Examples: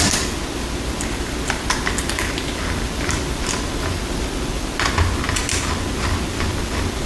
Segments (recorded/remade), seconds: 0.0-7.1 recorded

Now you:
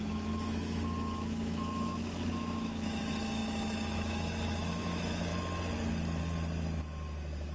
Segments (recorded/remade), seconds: 0.0-5.3 remade; 5.3-6.8 recorded; 6.8-7.5 remade

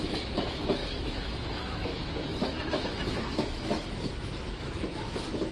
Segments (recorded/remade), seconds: 0.0-5.5 remade

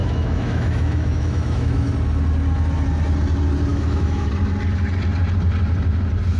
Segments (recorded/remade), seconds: 0.0-1.9 remade; 1.9-3.7 recorded; 3.7-4.3 remade; 4.3-6.4 recorded

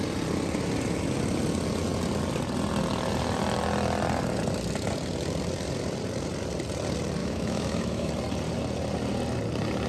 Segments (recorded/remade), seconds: 0.0-7.2 recorded; 7.2-8.1 remade; 8.1-9.9 recorded

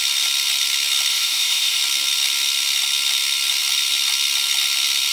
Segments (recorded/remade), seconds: 0.0-1.1 recorded; 1.1-1.8 remade; 1.8-5.1 recorded

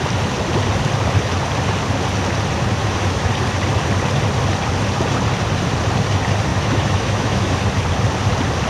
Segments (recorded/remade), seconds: 0.0-2.8 recorded; 2.8-3.3 remade; 3.3-6.5 recorded; 6.5-7.5 remade; 7.5-8.7 recorded

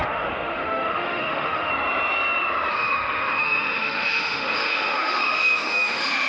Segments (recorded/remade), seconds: 0.0-1.7 remade; 1.7-2.7 recorded; 2.7-6.3 remade